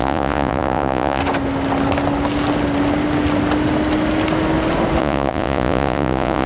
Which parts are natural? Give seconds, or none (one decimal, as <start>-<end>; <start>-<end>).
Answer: 1.2-5.0